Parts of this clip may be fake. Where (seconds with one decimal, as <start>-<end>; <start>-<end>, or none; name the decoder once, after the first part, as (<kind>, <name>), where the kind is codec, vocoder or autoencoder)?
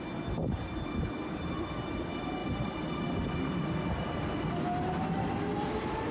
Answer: none